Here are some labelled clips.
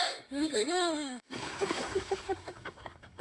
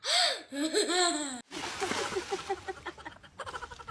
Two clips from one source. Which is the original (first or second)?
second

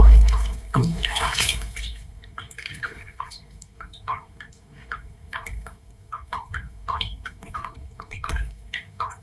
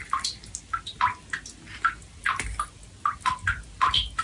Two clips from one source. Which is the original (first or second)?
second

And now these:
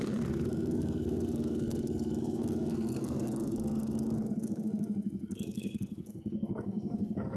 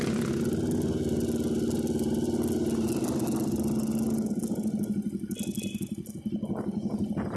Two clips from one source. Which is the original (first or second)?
second